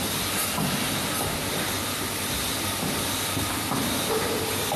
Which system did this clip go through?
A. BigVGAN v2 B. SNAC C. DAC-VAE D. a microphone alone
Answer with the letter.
A